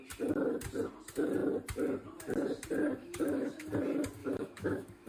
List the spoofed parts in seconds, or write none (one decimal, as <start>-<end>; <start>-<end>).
3.0-3.7; 4.2-5.1